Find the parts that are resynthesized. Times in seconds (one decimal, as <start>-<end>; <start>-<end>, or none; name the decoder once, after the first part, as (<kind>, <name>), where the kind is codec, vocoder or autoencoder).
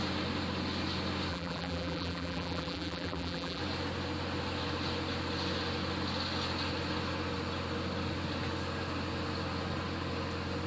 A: 1.3-3.6 (vocoder, BigVGAN v2)